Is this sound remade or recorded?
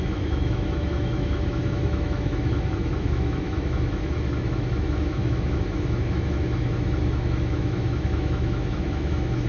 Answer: remade